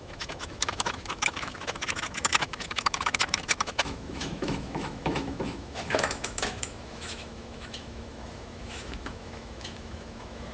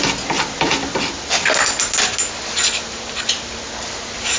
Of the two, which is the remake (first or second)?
first